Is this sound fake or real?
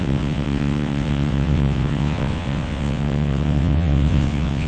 fake